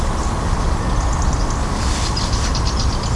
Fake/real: real